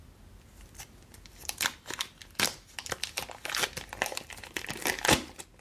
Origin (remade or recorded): recorded